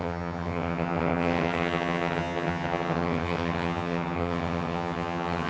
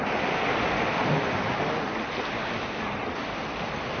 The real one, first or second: second